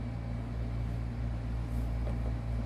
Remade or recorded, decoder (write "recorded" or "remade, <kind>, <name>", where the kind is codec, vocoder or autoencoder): recorded